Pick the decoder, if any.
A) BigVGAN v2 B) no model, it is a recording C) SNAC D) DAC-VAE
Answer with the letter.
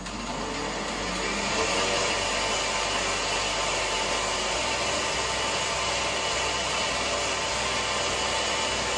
B